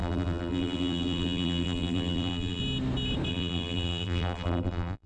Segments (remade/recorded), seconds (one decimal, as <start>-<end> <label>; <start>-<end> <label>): 0.0-2.6 remade; 2.6-3.3 recorded; 3.3-5.1 remade